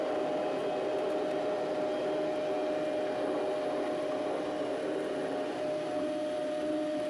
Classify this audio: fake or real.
real